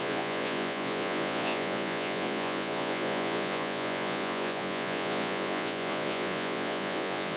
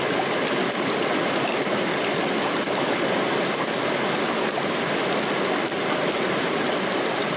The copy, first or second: first